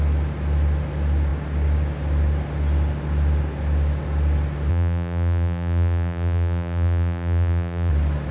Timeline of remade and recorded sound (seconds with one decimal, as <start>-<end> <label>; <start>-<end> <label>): 0.0-4.7 recorded; 4.7-7.9 remade; 7.9-8.3 recorded